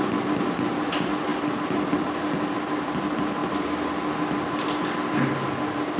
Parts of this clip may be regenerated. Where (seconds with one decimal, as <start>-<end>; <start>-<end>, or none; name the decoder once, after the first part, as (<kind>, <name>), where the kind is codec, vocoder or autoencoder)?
none